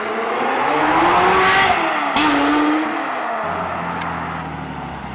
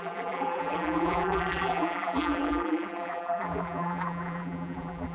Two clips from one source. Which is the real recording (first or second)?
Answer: first